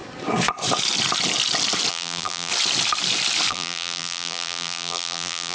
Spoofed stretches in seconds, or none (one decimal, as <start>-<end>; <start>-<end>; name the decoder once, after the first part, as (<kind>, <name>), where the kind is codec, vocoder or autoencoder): 1.9-2.5 (vocoder, BigVGAN v2); 3.5-5.5